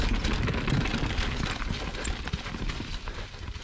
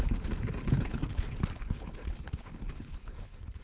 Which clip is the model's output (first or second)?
second